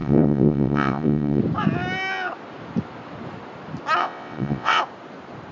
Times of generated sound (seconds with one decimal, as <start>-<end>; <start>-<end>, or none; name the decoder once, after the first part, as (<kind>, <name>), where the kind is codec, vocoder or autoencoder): 0.0-1.4 (vocoder, WaveNeXt); 4.0-4.8